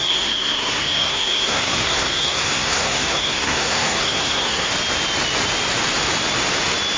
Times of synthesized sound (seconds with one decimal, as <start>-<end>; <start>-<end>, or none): 0.0-4.7